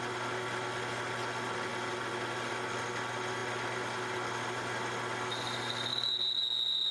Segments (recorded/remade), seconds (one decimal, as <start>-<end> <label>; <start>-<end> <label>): 0.0-6.9 recorded